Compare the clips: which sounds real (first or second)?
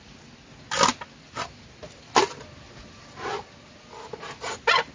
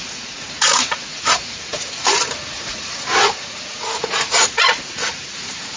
first